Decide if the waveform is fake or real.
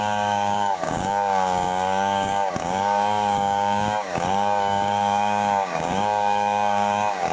fake